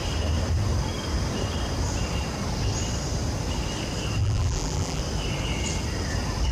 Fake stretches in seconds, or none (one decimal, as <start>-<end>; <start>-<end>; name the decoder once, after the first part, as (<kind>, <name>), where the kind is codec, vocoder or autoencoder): 4.2-5.0 (vocoder, BigVGAN v2)